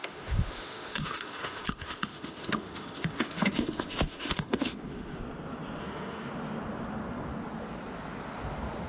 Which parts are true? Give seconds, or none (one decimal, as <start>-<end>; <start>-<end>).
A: 5.2-5.8; 6.3-8.9